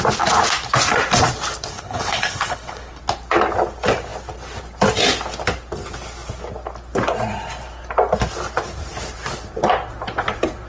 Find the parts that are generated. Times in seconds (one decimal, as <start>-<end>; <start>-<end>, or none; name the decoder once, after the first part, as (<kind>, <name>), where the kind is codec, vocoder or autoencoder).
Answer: 1.7-3.0 (codec, HILCodec)

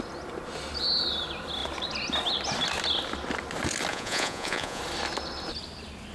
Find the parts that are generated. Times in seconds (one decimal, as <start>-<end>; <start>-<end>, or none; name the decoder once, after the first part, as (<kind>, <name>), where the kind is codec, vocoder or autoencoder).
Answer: 3.9-4.8 (vocoder, Vocos)

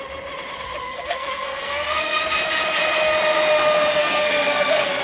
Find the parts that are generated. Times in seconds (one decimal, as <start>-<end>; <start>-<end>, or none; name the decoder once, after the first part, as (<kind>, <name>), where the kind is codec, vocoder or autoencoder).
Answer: 0.8-2.2 (codec, SNAC); 4.0-5.0

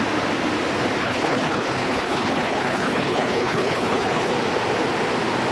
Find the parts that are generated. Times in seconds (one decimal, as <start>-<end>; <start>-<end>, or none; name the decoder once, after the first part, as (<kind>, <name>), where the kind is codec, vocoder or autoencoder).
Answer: 1.0-4.3 (codec, HILCodec)